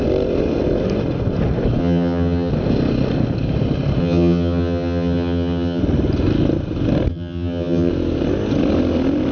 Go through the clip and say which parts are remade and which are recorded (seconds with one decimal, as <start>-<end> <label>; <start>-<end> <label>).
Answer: 0.0-1.8 recorded; 1.8-2.5 remade; 2.5-4.0 recorded; 4.0-5.8 remade; 5.8-7.1 recorded; 7.1-7.9 remade; 7.9-9.3 recorded